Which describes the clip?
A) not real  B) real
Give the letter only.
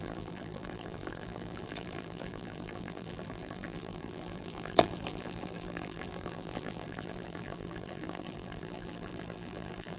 A